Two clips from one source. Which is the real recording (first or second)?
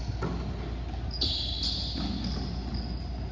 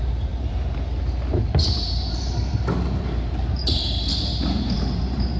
first